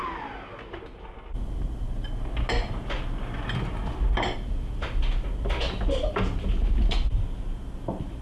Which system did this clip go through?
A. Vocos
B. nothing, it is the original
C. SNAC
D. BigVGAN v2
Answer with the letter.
B